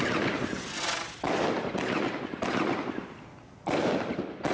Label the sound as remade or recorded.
recorded